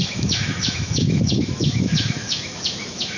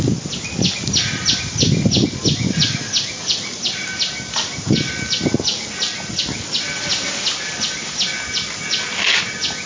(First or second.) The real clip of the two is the second